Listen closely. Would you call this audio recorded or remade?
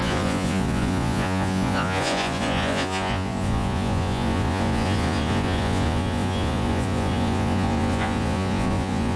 remade